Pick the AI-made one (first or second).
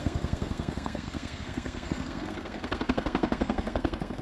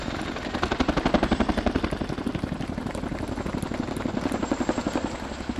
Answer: first